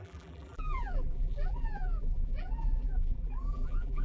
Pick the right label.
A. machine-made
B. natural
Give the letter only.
A